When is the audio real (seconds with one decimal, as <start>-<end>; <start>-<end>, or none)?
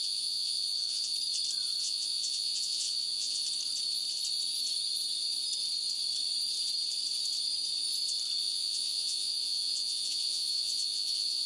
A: 1.1-1.8; 3.4-8.4